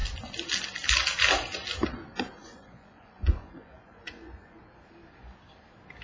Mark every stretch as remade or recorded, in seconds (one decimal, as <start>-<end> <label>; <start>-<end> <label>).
0.0-2.4 recorded; 2.4-4.6 remade; 4.6-6.0 recorded